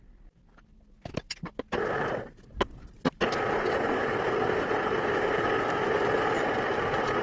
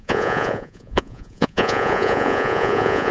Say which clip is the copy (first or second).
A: second